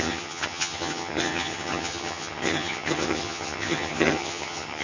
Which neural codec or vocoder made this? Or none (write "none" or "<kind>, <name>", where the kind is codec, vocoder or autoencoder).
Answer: vocoder, HiFi-GAN